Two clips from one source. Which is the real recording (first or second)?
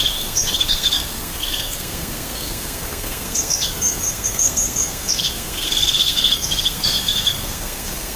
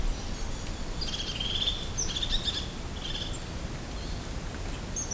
second